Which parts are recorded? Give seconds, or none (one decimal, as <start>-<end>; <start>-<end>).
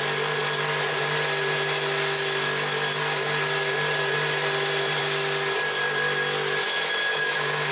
0.0-6.6